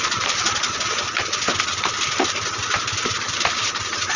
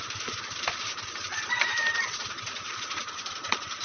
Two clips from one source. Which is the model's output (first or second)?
second